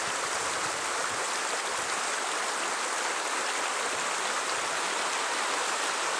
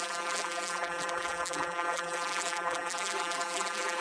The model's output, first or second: second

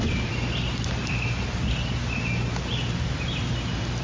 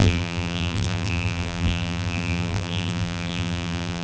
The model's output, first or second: second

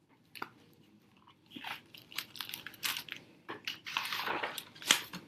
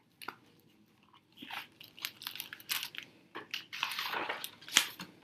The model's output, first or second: first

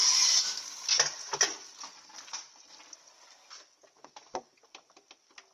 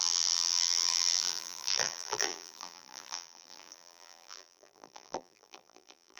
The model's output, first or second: second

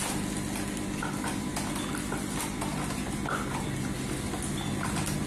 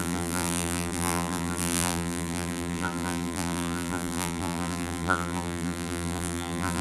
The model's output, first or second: second